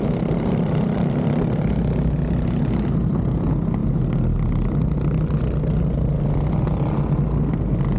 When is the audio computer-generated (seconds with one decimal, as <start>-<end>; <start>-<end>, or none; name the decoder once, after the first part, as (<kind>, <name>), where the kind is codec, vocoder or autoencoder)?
none